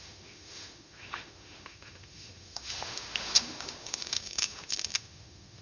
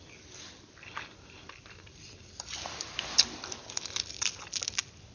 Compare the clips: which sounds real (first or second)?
second